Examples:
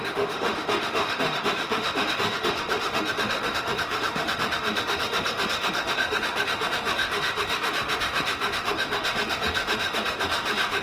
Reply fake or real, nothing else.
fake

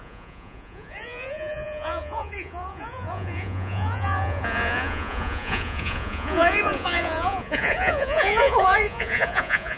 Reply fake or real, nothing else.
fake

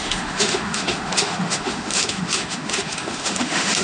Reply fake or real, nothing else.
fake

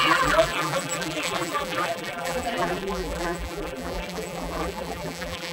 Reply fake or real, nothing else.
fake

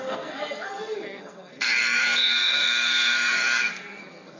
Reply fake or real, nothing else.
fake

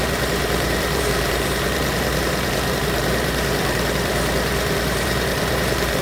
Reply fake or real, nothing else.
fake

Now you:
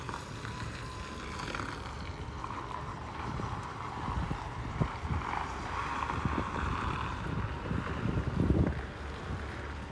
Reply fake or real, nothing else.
fake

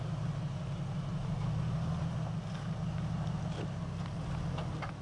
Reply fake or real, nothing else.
real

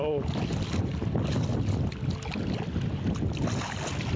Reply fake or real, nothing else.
real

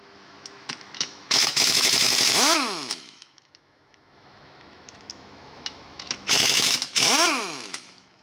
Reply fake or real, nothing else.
fake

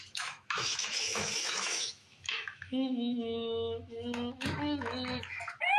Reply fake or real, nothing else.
fake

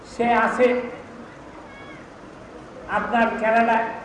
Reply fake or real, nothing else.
real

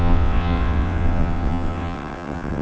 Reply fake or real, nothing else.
fake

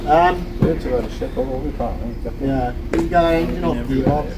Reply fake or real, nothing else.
real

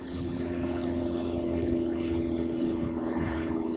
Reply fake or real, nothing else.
fake